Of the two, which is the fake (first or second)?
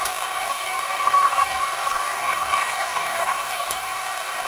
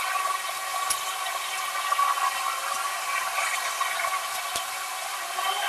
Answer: first